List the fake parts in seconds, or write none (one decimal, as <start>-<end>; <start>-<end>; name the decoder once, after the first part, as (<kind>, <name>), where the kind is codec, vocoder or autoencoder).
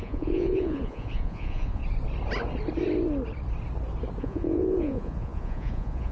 0.0-1.8 (vocoder, Vocos); 4.2-6.1